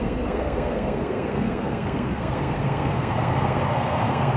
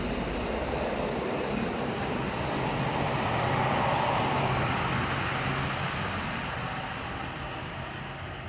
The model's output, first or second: first